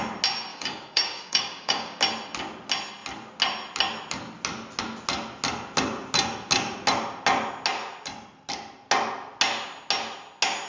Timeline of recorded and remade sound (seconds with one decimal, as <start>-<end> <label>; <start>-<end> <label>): 0.0-0.5 recorded; 0.5-2.0 remade; 2.0-10.7 recorded